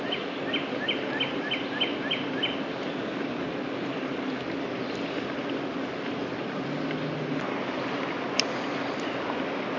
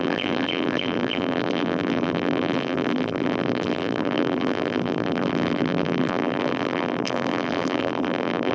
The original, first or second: first